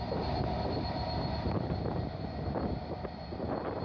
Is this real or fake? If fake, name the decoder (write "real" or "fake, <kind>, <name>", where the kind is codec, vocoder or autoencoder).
real